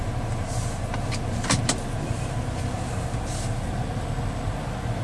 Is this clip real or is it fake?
real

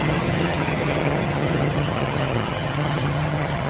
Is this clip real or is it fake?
fake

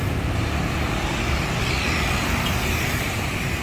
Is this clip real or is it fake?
real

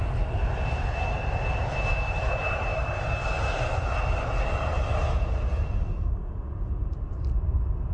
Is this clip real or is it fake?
real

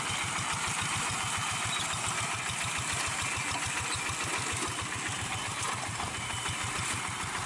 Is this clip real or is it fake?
real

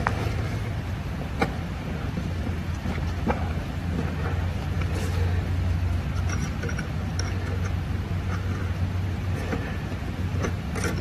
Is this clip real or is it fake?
fake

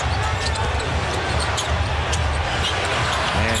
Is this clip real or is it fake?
real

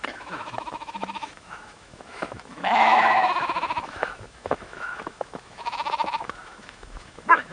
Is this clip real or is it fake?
fake